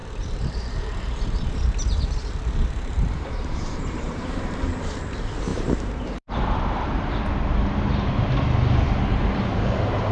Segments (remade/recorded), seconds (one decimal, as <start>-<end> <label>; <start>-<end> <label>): 0.0-4.9 remade; 4.9-5.5 recorded; 5.5-7.2 remade; 7.2-9.1 recorded; 9.1-10.1 remade